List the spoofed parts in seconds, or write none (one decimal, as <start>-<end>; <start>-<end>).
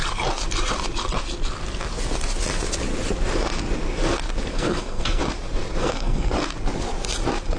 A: 4.5-5.2; 5.8-6.3